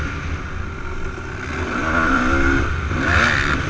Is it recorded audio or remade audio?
recorded